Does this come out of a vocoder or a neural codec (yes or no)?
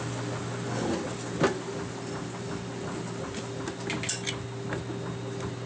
no